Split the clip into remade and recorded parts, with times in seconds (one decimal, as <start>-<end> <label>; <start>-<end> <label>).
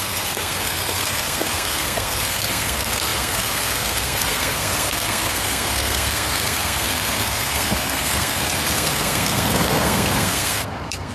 0.0-11.1 remade